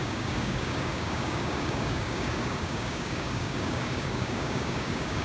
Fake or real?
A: fake